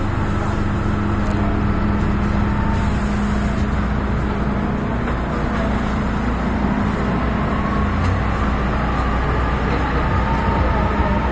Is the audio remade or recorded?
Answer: recorded